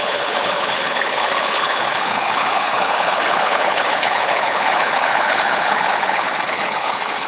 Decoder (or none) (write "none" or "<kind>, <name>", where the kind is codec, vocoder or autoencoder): codec, HILCodec